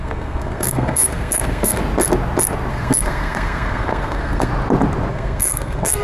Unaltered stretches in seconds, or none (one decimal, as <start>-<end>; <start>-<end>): 1.8-2.7; 4.5-5.1